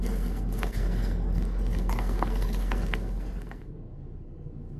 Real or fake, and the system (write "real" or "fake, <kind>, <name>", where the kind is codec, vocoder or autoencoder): fake, codec, SNAC